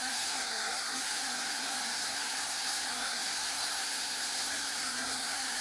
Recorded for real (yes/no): no